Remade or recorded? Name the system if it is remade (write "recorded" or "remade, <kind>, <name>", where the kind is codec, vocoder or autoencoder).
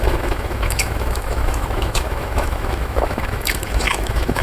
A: remade, autoencoder, DAC-VAE